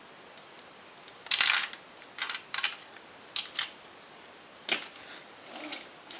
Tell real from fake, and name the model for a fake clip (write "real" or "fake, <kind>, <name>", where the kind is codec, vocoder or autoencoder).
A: real